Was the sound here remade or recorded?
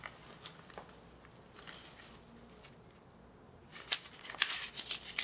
recorded